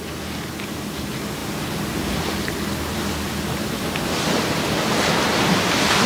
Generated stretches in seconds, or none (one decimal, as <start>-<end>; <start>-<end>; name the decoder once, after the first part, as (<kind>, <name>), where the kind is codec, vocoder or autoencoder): none